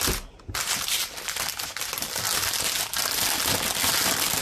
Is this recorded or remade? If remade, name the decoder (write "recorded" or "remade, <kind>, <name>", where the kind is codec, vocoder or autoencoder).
recorded